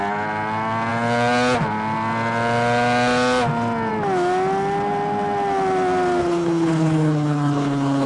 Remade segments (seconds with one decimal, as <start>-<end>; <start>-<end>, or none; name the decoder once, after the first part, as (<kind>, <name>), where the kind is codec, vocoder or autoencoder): 6.2-8.1 (codec, HILCodec)